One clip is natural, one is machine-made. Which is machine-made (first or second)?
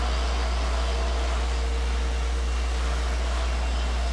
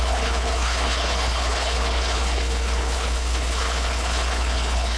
second